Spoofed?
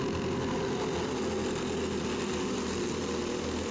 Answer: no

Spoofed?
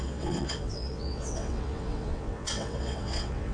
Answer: yes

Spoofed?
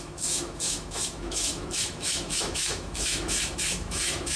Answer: yes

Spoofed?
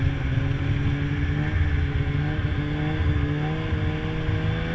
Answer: no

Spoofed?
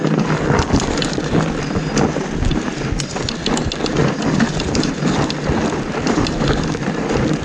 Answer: no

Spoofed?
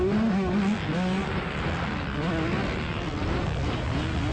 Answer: no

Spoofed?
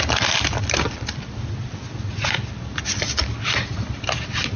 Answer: no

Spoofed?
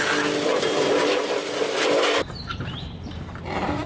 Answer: no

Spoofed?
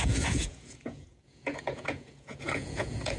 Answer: yes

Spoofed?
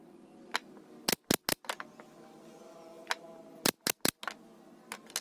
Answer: no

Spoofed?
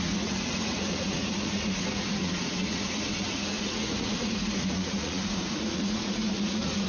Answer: yes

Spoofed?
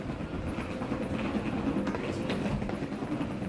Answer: no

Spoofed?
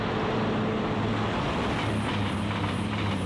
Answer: no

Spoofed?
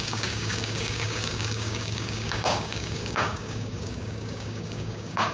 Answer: yes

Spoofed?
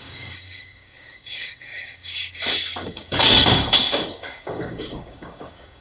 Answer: yes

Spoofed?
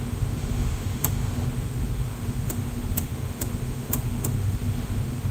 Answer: yes